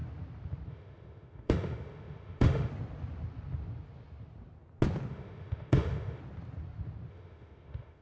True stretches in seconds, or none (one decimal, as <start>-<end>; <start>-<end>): 0.0-0.7; 2.7-5.1; 6.2-7.1